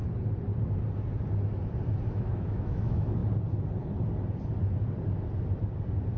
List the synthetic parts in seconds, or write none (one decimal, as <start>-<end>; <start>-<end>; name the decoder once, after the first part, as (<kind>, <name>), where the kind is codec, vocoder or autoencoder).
2.1-3.2 (autoencoder, DAC-VAE)